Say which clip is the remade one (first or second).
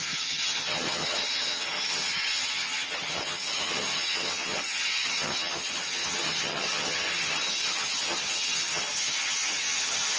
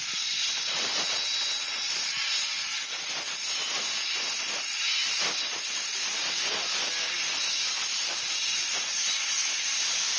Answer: first